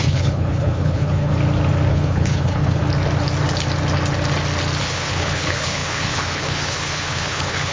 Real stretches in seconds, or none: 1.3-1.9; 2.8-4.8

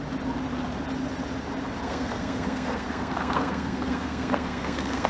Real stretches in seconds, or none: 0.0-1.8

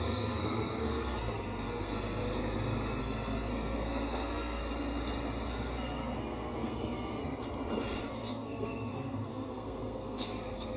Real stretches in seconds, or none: 2.2-3.0; 4.6-5.5; 7.2-8.0

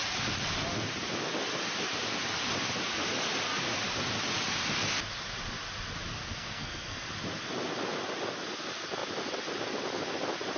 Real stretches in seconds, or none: 0.0-6.1; 7.1-10.6

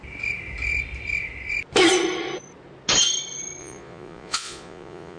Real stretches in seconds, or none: 0.0-3.6

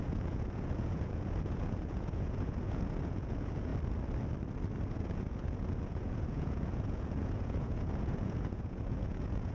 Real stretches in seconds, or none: 3.7-4.8